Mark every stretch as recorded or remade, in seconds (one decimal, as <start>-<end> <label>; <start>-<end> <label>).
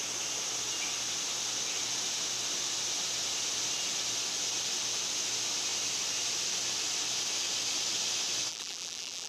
0.0-8.5 recorded; 8.5-9.3 remade